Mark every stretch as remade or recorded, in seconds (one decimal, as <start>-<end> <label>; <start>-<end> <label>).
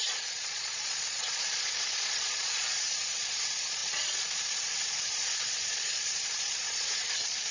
0.0-7.5 remade